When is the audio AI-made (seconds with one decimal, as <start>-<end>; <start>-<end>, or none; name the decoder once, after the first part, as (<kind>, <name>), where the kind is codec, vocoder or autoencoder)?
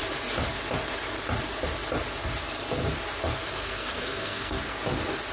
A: 3.3-4.8 (codec, SNAC)